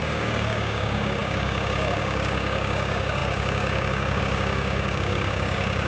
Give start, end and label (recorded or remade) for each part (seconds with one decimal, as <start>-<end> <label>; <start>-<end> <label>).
0.0-5.9 remade